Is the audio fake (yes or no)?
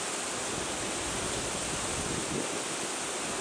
no